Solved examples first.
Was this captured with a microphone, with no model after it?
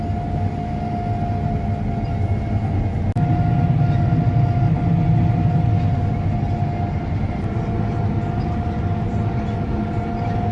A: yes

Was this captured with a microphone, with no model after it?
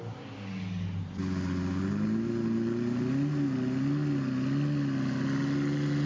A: yes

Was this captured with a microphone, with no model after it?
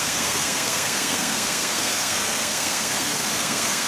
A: no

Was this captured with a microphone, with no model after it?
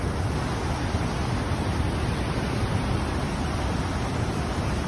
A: yes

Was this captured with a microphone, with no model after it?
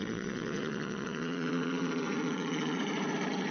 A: no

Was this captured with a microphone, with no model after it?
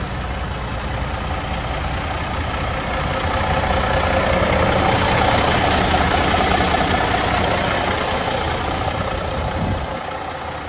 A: yes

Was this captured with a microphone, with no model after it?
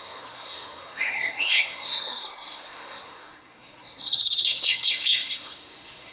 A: no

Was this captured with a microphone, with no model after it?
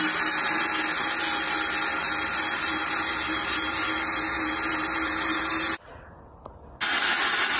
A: yes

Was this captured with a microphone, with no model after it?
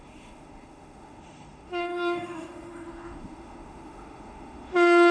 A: no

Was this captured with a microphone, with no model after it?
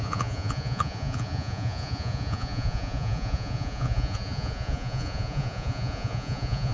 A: no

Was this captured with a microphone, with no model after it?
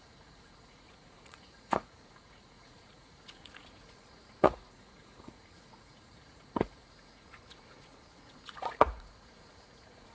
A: no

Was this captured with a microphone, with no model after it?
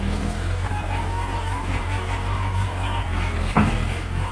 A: no